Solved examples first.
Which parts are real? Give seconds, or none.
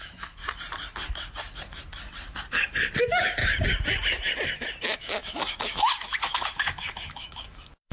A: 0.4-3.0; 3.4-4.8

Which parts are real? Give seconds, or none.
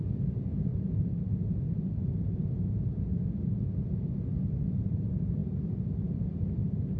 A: 0.0-7.0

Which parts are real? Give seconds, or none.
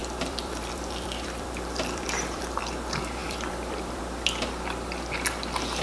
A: 2.6-3.2; 4.0-5.8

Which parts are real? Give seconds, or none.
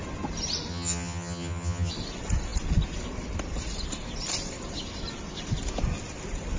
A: 0.0-0.7; 1.9-6.6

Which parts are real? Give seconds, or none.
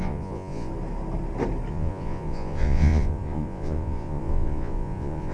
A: 0.7-1.7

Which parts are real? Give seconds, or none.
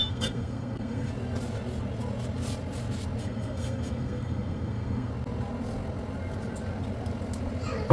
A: 1.1-3.2; 5.1-7.9